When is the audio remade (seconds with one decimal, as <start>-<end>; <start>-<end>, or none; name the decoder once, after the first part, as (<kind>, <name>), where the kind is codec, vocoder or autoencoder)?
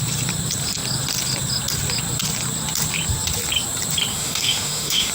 4.1-5.1 (autoencoder, DAC-VAE)